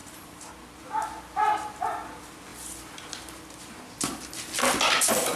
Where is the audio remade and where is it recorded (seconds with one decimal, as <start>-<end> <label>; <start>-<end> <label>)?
0.0-0.5 remade; 0.5-5.4 recorded